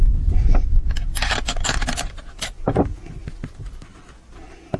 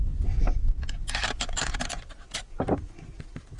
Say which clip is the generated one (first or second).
second